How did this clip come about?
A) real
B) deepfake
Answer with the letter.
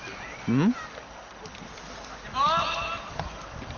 A